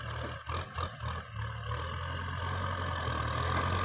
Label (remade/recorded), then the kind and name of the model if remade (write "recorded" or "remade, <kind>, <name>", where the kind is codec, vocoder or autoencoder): recorded